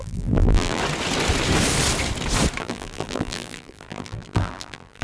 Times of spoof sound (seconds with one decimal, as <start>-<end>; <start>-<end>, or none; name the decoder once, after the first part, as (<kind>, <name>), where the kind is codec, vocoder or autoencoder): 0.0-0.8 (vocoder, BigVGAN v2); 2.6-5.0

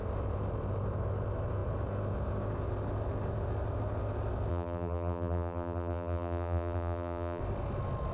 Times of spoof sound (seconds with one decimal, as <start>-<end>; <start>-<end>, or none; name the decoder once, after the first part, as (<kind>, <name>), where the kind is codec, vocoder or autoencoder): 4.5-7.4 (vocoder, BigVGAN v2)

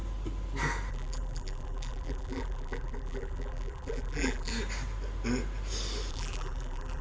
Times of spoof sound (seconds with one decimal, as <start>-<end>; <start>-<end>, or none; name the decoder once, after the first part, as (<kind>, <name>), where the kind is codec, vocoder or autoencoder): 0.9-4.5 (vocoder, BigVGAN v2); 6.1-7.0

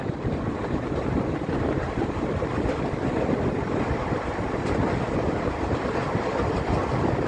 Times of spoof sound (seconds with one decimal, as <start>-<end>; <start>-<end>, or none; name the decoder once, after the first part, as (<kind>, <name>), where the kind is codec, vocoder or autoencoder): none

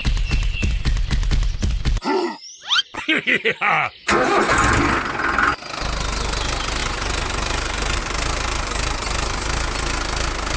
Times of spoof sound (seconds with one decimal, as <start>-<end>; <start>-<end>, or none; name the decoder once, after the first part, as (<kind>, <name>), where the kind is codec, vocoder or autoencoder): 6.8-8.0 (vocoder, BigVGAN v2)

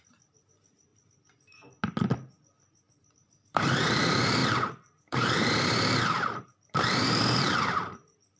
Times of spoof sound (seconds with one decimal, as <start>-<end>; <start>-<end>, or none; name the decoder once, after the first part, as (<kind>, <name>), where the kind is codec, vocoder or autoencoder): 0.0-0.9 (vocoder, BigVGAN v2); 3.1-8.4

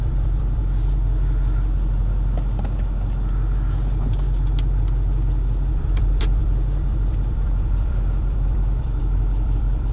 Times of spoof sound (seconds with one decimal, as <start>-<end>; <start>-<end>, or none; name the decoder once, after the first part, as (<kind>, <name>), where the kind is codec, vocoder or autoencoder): 0.0-0.6 (vocoder, BigVGAN v2); 5.7-9.9